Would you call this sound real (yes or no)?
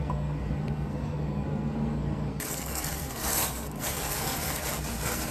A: no